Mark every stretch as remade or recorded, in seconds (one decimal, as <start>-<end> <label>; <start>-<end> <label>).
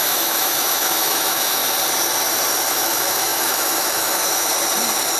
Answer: 0.0-1.6 remade; 1.6-2.7 recorded; 2.7-4.5 remade; 4.5-5.2 recorded